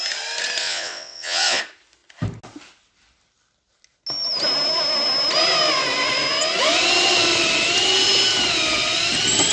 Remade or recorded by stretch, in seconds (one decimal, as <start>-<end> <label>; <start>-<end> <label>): 0.0-0.6 recorded; 0.6-1.6 remade; 1.6-9.5 recorded